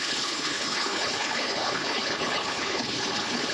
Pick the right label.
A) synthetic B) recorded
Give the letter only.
A